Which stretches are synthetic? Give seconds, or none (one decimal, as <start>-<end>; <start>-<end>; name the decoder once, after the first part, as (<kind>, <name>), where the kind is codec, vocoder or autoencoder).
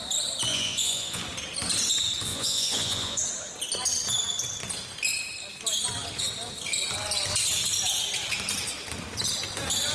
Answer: 0.5-1.2 (vocoder, Vocos); 2.3-3.2